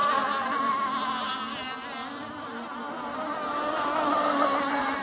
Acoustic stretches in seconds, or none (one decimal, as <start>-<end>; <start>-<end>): 0.0-5.0